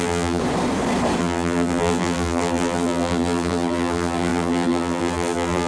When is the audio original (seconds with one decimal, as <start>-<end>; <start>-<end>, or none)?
0.4-1.2